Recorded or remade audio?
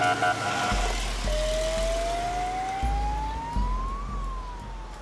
recorded